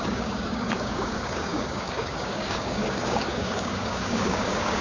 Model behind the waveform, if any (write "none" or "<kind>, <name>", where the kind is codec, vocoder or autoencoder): codec, DAC